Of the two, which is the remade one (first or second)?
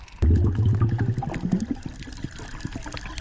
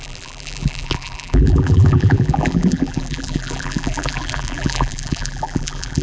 second